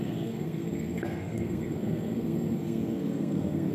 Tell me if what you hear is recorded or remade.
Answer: remade